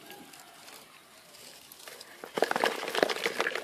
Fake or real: real